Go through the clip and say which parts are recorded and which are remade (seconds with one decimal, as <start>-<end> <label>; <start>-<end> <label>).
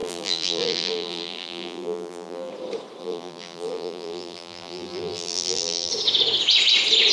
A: 0.0-2.5 remade; 2.5-3.0 recorded; 3.0-5.9 remade; 5.9-7.1 recorded